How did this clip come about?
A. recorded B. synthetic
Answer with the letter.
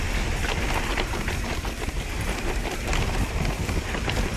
A